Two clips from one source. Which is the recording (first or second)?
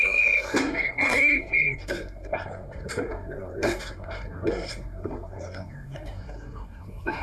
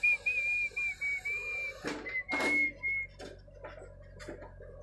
second